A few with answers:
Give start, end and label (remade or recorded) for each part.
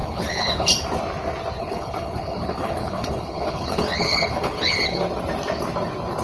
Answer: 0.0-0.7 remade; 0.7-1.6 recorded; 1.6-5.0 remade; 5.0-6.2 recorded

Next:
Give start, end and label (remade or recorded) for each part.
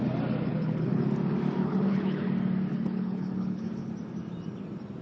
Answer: 0.0-0.5 recorded; 0.5-1.0 remade; 1.0-1.6 recorded; 1.6-2.3 remade; 2.3-2.7 recorded; 2.7-3.9 remade; 3.9-5.0 recorded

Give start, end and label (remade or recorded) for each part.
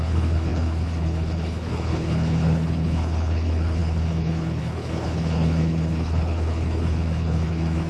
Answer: 0.0-7.9 remade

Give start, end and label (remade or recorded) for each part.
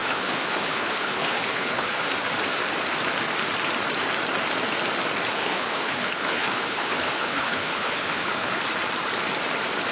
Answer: 0.0-2.1 remade; 2.1-5.4 recorded; 5.4-8.6 remade; 8.6-9.9 recorded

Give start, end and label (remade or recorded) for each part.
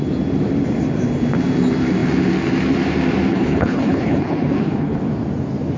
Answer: 0.0-3.3 recorded; 3.3-5.0 remade; 5.0-5.8 recorded